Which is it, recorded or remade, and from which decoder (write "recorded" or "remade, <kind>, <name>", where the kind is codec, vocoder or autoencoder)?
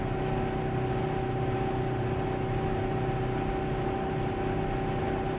recorded